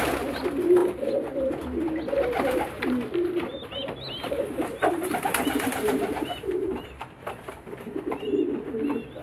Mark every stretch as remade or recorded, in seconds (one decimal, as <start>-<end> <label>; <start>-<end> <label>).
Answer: 0.0-3.5 recorded; 3.5-8.4 remade; 8.4-9.2 recorded